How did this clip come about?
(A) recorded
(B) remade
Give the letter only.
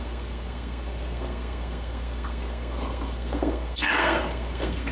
B